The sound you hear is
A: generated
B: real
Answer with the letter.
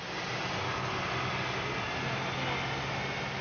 B